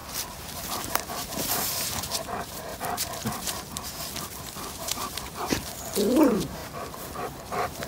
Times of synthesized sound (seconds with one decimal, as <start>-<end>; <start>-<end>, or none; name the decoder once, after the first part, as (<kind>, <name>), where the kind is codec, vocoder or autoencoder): 0.7-2.7 (vocoder, BigVGAN v2); 4.8-6.6; 7.4-7.9